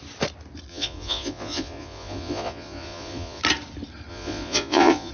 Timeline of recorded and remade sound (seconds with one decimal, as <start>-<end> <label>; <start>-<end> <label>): 0.0-0.7 recorded; 0.7-3.4 remade; 3.4-4.1 recorded; 4.1-5.1 remade